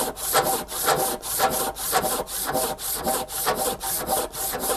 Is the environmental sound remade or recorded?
recorded